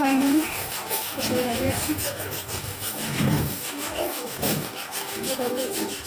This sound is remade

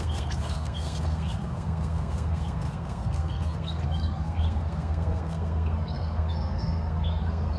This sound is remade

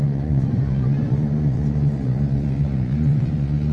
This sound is remade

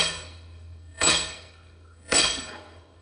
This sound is remade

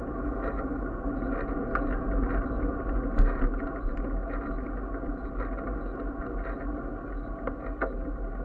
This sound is recorded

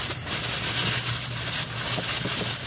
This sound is recorded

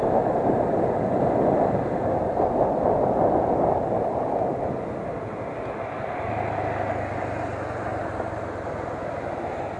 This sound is recorded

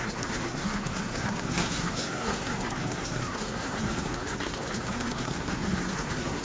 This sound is remade